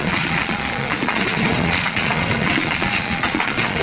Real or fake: fake